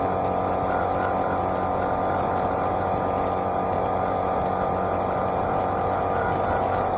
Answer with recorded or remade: recorded